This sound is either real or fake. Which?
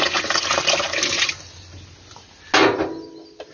real